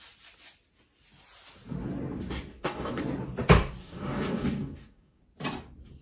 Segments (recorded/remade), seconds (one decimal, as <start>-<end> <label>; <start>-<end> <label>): 0.0-2.5 recorded; 2.5-3.0 remade; 3.0-3.8 recorded; 3.8-5.2 remade; 5.2-6.0 recorded